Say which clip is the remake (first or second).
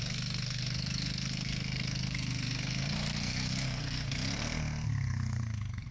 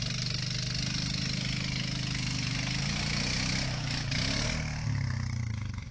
first